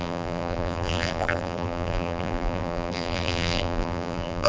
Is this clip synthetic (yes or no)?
yes